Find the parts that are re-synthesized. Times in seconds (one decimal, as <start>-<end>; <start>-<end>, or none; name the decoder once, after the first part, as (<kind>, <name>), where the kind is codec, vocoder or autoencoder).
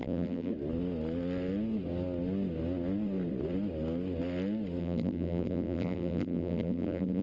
0.0-0.5 (vocoder, BigVGAN v2); 4.8-7.2